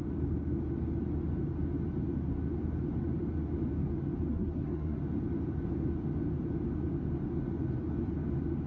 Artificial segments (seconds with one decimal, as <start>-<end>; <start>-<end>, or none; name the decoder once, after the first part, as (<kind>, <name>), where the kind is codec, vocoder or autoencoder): 4.3-5.0 (codec, SNAC)